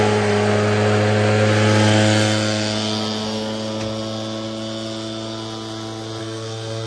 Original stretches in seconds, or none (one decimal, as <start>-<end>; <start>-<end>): 0.0-6.2